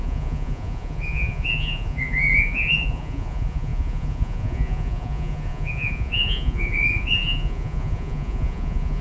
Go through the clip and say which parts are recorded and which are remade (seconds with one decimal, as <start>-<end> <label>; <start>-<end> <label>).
0.0-9.0 remade